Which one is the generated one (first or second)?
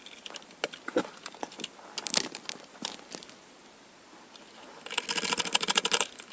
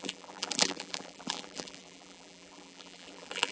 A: second